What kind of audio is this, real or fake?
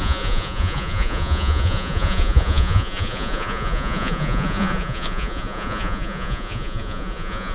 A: fake